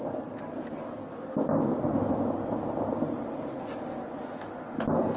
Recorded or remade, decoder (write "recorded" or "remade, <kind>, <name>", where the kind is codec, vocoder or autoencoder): recorded